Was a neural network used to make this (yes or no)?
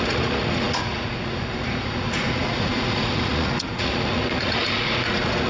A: yes